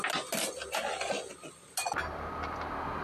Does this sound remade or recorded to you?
recorded